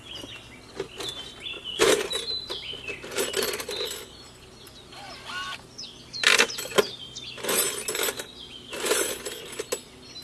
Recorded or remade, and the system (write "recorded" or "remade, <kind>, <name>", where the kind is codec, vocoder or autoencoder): recorded